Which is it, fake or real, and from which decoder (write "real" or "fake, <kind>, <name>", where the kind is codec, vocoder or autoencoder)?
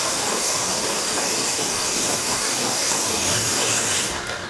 fake, codec, DAC